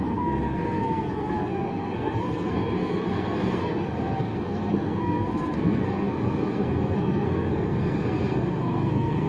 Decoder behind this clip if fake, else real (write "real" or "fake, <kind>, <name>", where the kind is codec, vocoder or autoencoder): fake, codec, SNAC